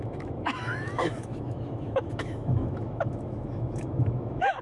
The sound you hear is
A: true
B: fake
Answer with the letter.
B